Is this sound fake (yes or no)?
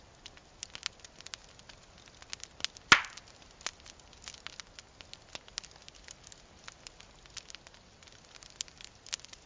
no